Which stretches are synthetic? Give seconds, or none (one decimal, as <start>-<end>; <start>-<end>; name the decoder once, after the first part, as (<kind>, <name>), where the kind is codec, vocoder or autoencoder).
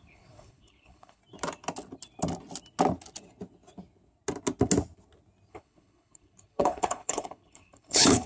0.0-1.2 (codec, HILCodec); 5.5-8.3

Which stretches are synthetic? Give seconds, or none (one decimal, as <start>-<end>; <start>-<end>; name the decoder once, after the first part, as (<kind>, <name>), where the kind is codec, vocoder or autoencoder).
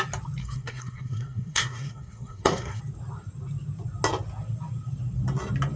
0.4-2.8 (codec, SNAC)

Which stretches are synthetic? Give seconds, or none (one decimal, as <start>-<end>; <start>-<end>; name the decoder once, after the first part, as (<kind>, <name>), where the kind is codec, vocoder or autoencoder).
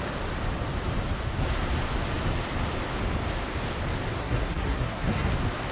4.2-5.3 (codec, SNAC)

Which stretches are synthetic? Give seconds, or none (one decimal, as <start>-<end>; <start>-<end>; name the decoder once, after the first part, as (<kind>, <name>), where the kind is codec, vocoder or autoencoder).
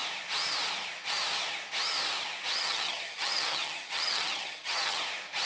2.5-5.0 (vocoder, HiFi-GAN)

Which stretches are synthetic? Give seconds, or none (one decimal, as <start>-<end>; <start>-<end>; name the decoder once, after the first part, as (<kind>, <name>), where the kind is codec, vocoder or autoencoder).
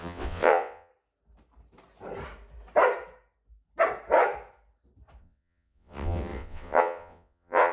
0.0-0.9 (vocoder, WaveNeXt); 5.2-7.7